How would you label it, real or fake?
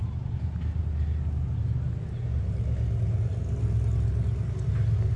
real